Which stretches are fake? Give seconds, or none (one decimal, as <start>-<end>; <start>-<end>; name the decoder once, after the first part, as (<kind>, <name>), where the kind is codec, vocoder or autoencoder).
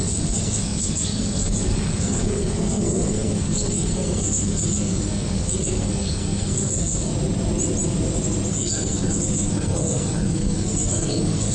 0.0-7.1 (codec, SNAC); 8.5-11.5